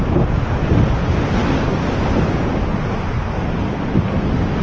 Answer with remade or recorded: recorded